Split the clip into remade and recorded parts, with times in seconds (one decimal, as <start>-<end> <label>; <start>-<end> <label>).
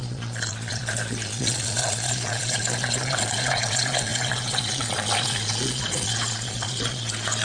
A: 0.0-7.4 remade